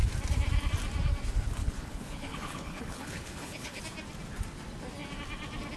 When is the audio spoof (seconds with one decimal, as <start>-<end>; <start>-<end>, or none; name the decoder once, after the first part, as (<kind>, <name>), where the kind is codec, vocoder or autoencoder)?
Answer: 1.6-3.8 (codec, HILCodec)